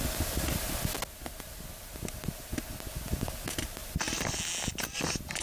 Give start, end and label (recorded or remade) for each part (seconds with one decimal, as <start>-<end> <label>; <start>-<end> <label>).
0.0-5.4 recorded